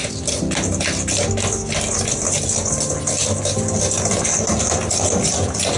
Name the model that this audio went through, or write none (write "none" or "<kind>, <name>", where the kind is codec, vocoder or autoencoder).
none